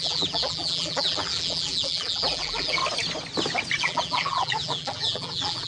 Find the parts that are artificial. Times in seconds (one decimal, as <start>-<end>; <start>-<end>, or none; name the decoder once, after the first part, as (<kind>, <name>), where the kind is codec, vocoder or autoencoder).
0.0-2.8 (vocoder, BigVGAN v2); 3.8-5.7